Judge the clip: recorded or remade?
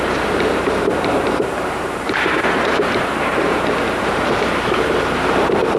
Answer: remade